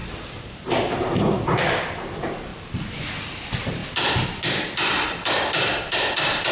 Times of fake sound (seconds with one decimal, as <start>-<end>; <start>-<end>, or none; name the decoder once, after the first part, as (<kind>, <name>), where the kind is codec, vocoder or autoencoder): 0.0-2.5 (vocoder, BigVGAN v2); 3.2-3.8; 4.6-6.5